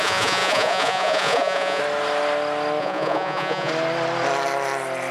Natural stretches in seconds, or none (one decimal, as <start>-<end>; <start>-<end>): 1.8-2.8; 3.7-5.1